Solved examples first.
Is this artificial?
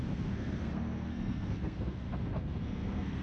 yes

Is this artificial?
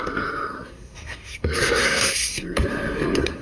yes